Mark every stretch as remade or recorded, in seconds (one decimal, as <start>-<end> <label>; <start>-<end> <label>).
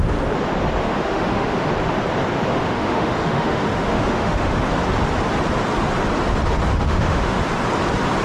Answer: 0.0-0.8 recorded; 0.8-1.7 remade; 1.7-2.5 recorded; 2.5-4.7 remade; 4.7-6.7 recorded; 6.7-7.4 remade; 7.4-8.2 recorded